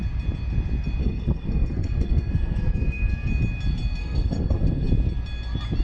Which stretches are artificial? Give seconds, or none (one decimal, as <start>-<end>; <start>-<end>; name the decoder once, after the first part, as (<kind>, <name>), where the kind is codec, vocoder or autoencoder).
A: 1.0-3.3 (codec, SNAC); 4.0-4.9